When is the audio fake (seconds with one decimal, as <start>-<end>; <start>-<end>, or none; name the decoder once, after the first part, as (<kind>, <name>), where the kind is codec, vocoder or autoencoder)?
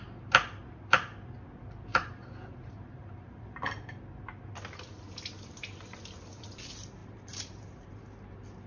1.9-4.0 (vocoder, BigVGAN v2); 7.0-8.0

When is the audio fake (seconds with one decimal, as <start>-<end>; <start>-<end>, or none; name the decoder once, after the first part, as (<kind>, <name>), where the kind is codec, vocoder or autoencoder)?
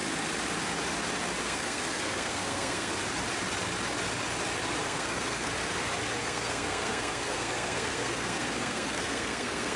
1.4-2.9 (codec, SNAC); 4.8-5.5; 6.2-9.8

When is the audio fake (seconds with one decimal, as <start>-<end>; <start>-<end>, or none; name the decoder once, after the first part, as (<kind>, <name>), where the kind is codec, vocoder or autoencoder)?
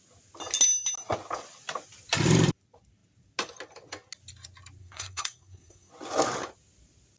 4.8-5.9 (codec, SNAC)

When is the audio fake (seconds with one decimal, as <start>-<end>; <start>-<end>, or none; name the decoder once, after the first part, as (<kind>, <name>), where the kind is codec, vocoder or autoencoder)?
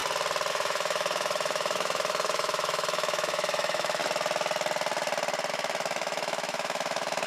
0.5-4.0 (autoencoder, DAC-VAE); 5.5-7.3